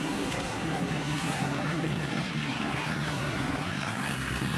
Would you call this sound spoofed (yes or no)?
yes